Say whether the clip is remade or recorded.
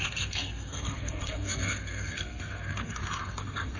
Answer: remade